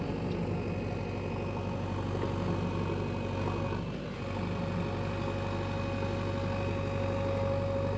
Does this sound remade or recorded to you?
recorded